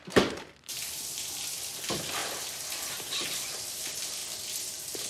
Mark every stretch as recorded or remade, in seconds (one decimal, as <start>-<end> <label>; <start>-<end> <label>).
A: 0.0-0.7 recorded; 0.7-1.2 remade; 1.2-5.1 recorded